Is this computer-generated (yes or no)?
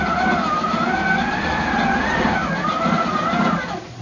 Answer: no